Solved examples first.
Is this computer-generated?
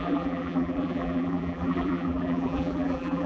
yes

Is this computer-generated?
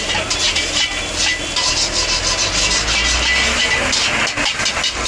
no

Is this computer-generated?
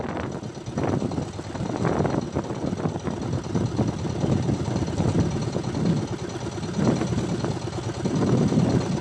no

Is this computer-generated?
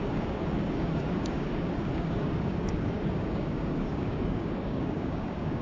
yes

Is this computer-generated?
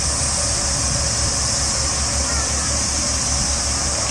no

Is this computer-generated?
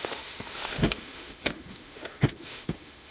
yes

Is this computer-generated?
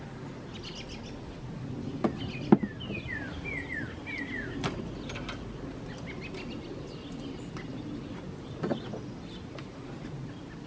no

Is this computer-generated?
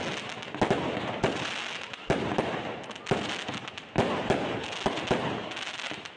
no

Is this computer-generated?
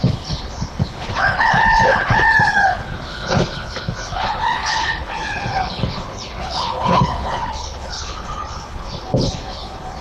yes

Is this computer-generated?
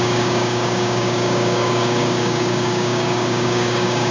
yes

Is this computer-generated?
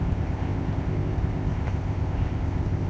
yes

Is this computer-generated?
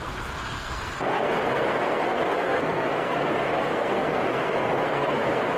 yes